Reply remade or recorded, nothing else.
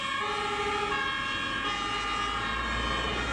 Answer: recorded